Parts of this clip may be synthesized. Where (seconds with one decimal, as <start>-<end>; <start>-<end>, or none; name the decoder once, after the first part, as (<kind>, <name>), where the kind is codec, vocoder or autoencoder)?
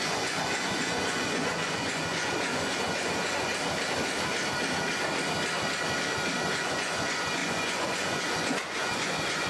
0.0-3.5 (vocoder, Vocos); 6.4-9.5